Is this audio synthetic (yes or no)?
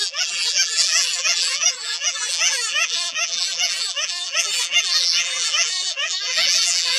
yes